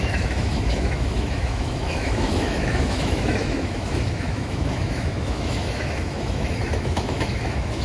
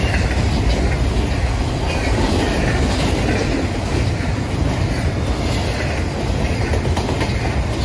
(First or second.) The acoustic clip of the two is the second